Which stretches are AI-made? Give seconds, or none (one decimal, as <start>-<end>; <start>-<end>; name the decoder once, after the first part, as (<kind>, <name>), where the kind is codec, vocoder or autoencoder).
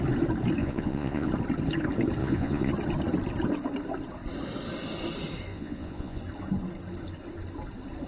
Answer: 0.6-1.3 (vocoder, Vocos); 2.2-2.7; 5.5-6.2